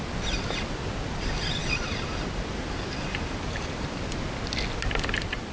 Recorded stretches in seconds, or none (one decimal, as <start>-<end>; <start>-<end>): 0.0-5.5